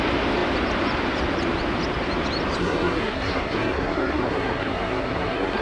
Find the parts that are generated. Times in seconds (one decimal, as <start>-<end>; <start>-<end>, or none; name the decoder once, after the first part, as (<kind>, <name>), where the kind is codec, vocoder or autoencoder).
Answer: 2.6-5.6 (codec, SNAC)